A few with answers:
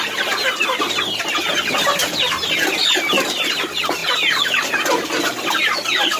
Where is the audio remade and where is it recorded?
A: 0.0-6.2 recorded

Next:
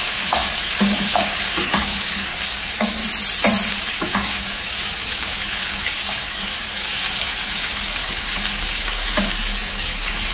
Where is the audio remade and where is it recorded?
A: 0.0-3.0 remade; 3.0-3.7 recorded; 3.7-10.3 remade

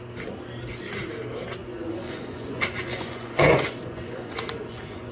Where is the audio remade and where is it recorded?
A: 0.0-1.6 recorded; 1.6-5.1 remade

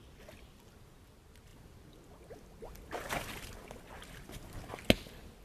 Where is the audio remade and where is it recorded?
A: 0.0-5.4 recorded

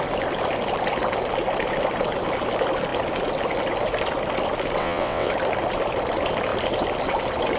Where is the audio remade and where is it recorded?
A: 0.0-4.8 recorded; 4.8-5.3 remade; 5.3-7.6 recorded

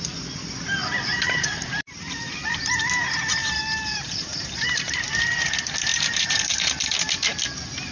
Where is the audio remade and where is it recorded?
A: 0.0-0.8 recorded; 0.8-2.6 remade; 2.6-3.4 recorded; 3.4-4.9 remade; 4.9-5.9 recorded; 5.9-6.9 remade; 6.9-7.9 recorded